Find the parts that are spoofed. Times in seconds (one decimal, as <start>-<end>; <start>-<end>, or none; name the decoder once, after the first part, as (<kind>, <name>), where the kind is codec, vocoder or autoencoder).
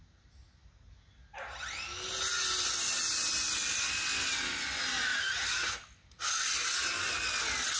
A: 5.1-5.7 (vocoder, BigVGAN v2)